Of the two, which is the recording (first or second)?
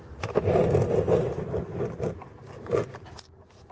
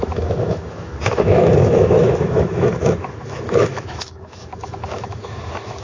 first